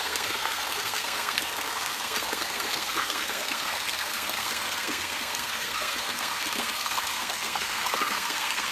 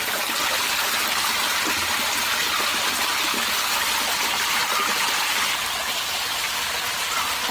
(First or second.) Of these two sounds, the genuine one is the second